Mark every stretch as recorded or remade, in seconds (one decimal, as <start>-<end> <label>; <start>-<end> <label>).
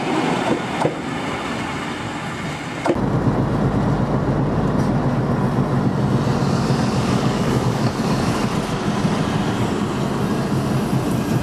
0.0-6.4 recorded; 6.4-8.5 remade; 8.5-11.4 recorded